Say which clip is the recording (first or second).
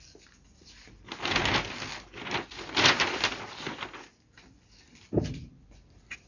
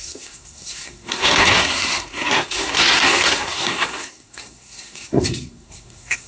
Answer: first